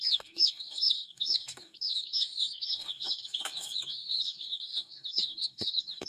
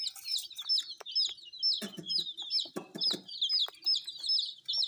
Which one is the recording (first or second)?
second